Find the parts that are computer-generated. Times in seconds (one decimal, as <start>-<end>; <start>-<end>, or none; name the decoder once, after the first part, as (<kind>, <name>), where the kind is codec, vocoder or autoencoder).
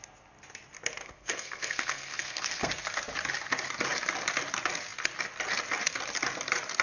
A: 1.0-2.7 (codec, SNAC)